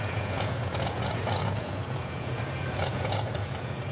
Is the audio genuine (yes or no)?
no